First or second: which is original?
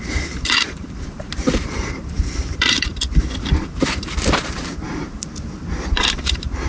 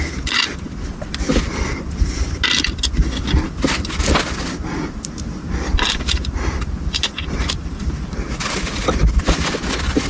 second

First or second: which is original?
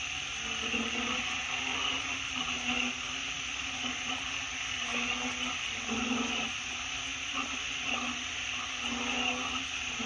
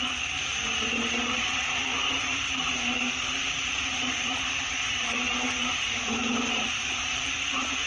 first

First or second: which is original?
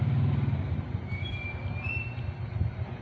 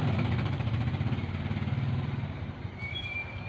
first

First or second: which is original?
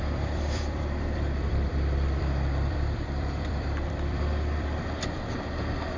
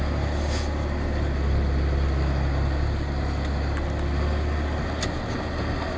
second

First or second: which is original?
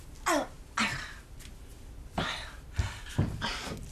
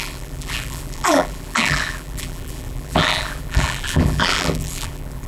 first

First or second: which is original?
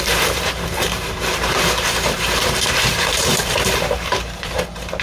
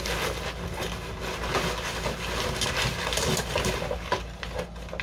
second